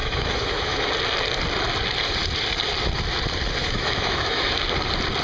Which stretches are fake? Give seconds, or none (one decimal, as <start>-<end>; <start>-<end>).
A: 0.0-0.9; 3.6-4.5